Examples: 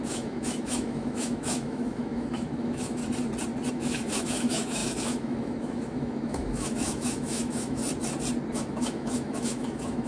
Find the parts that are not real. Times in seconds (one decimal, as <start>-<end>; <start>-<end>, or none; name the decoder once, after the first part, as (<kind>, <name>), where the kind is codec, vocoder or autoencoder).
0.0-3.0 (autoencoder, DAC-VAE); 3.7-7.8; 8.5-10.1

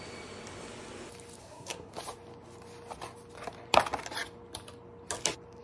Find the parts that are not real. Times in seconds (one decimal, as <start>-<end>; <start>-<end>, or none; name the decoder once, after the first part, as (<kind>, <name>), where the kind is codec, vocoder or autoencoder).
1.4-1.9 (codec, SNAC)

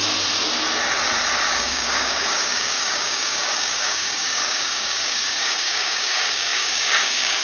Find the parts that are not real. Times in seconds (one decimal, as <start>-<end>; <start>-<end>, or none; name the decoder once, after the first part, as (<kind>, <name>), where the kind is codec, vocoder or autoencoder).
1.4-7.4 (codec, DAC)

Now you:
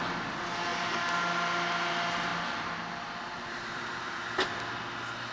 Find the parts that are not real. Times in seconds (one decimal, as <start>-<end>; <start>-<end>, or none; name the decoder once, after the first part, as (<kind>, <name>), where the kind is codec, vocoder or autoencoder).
2.3-4.3 (vocoder, BigVGAN v2)

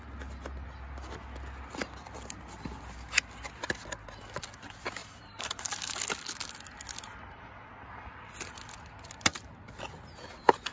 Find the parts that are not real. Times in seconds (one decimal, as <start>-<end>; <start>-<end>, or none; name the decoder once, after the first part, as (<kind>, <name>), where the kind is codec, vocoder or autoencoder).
5.0-5.7 (vocoder, BigVGAN v2)

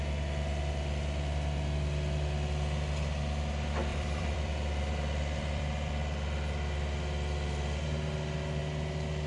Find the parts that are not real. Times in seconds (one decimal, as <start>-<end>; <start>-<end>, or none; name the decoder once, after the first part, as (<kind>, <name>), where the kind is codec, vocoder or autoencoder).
3.9-5.9 (vocoder, BigVGAN v2)

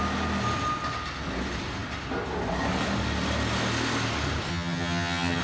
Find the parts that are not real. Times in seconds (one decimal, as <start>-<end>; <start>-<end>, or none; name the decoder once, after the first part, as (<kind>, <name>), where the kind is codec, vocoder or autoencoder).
4.5-5.4 (vocoder, HiFi-GAN)